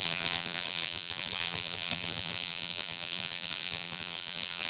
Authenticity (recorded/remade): remade